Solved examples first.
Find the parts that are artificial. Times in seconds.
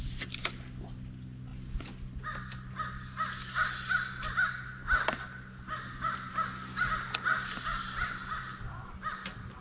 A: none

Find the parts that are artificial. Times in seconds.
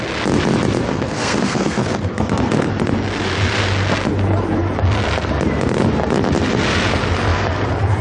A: 0.9-2.7 (codec, SNAC)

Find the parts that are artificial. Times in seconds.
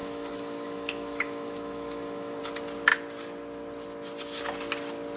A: 0.0-2.4 (autoencoder, DAC-VAE)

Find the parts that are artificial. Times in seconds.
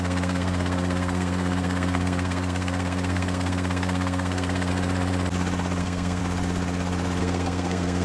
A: 0.0-4.7 (codec, SNAC); 5.8-6.2; 7.2-8.0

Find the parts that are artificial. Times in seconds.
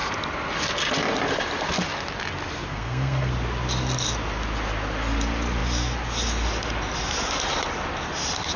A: 2.7-3.3 (codec, SNAC)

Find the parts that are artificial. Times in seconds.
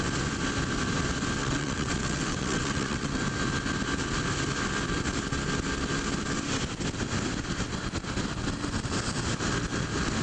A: 1.4-3.2 (vocoder, WaveNeXt)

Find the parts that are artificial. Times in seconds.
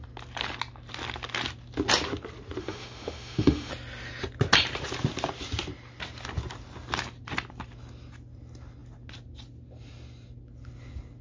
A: 2.6-3.7 (autoencoder, DAC-VAE)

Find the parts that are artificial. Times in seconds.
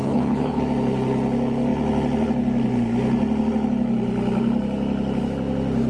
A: 0.0-0.6 (codec, HILCodec)